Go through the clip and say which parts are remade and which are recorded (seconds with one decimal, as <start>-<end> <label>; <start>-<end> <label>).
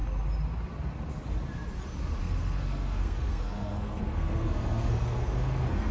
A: 0.0-2.2 recorded; 2.2-5.9 remade